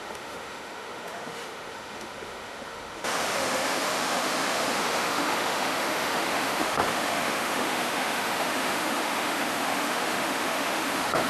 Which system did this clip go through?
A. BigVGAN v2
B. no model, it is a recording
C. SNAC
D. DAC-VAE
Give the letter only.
D